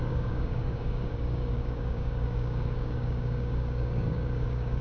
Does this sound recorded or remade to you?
remade